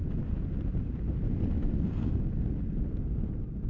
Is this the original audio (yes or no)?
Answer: yes